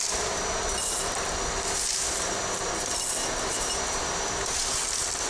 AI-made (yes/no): no